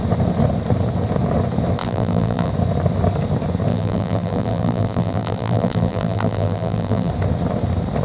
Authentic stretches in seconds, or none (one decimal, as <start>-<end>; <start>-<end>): 0.0-1.8; 2.5-3.7; 7.1-8.0